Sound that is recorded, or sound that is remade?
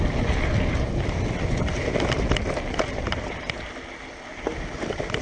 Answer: recorded